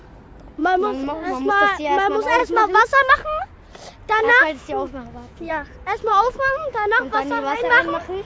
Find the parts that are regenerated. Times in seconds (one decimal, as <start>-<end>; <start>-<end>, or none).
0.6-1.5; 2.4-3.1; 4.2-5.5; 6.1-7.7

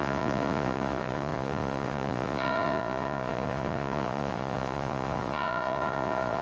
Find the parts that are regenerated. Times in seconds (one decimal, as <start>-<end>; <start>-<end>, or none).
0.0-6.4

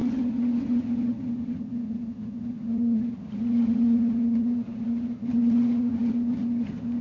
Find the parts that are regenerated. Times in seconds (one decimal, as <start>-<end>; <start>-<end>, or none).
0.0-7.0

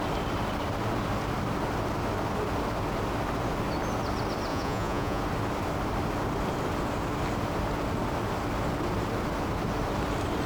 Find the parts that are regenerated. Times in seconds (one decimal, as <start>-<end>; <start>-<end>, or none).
4.5-5.2

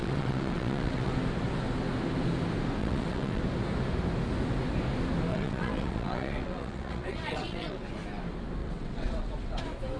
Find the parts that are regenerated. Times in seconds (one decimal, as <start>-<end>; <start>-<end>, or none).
0.0-1.1; 2.8-3.4; 5.3-7.9; 8.6-9.6